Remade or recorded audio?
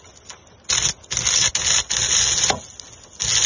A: recorded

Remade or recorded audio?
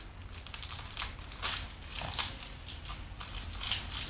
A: recorded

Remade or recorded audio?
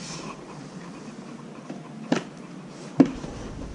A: recorded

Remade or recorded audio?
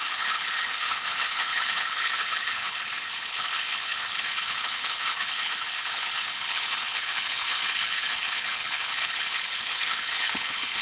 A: remade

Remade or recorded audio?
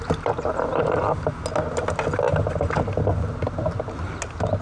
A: recorded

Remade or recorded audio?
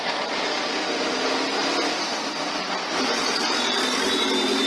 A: recorded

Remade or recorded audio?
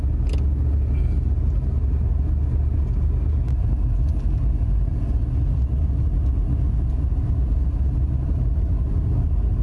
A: recorded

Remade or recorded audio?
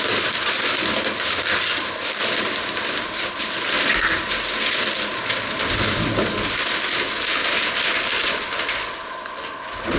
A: recorded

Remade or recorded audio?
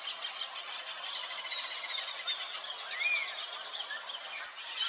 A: recorded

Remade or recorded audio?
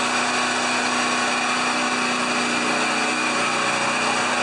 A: recorded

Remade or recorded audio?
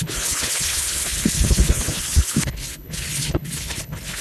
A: remade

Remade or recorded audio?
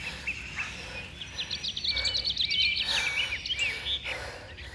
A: recorded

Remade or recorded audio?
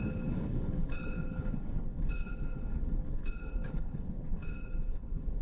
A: remade